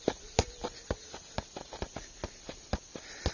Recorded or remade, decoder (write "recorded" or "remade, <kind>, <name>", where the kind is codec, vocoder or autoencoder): recorded